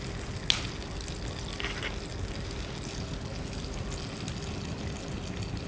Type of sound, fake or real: real